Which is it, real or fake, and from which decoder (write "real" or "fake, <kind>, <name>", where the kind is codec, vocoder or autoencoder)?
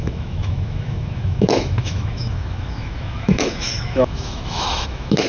fake, autoencoder, DAC-VAE